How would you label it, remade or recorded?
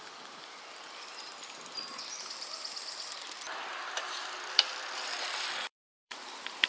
remade